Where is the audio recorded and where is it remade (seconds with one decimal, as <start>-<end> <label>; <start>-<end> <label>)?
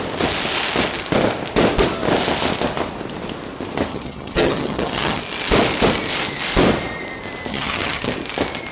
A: 0.0-3.9 recorded; 3.9-5.2 remade; 5.2-7.5 recorded; 7.5-8.1 remade; 8.1-8.7 recorded